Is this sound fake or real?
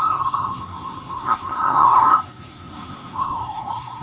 fake